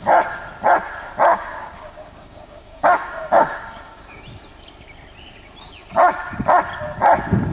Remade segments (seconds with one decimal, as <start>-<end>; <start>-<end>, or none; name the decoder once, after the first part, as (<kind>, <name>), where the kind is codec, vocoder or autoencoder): 1.3-4.2 (codec, DAC)